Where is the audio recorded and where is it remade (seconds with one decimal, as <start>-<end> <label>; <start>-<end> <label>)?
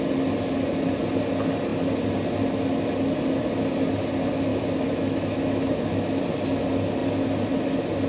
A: 0.0-4.5 recorded; 4.5-6.2 remade; 6.2-8.1 recorded